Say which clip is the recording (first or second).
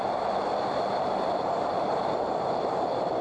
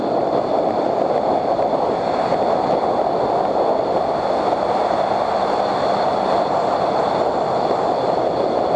second